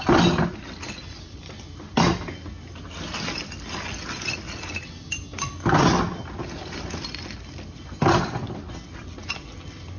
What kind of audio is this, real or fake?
real